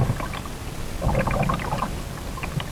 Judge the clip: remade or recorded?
recorded